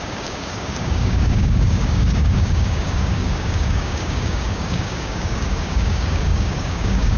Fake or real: fake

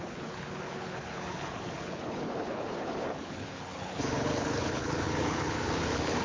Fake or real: fake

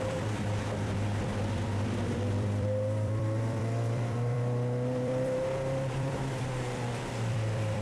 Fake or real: fake